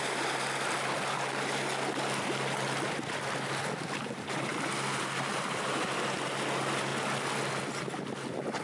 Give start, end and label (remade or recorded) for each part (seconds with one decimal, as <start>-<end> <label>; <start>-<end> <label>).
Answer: 0.0-8.6 recorded